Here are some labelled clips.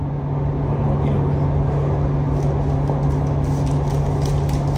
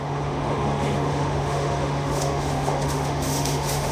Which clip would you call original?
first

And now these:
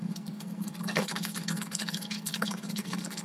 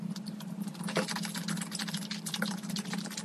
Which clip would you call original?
second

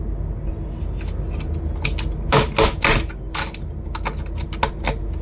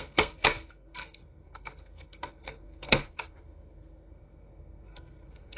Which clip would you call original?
first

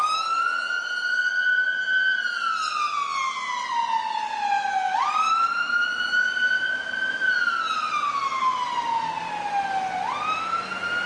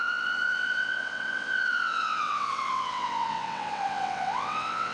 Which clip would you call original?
first